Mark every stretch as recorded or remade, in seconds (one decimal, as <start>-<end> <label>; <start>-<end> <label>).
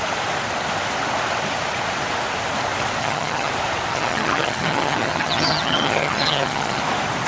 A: 0.0-3.0 recorded; 3.0-3.5 remade; 3.5-3.9 recorded; 3.9-6.8 remade; 6.8-7.3 recorded